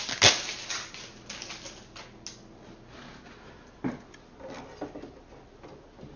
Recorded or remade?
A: recorded